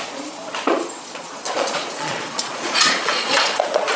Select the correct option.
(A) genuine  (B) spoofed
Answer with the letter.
B